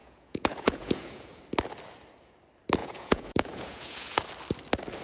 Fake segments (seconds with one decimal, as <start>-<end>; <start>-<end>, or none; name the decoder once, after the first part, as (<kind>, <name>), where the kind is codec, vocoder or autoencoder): 0.0-1.4 (vocoder, Vocos); 2.8-4.2